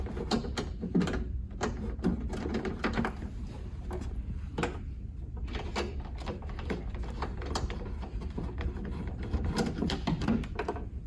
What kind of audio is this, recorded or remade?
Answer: recorded